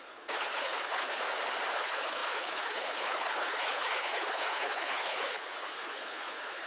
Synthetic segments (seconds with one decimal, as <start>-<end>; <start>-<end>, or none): 0.0-1.2; 1.8-6.7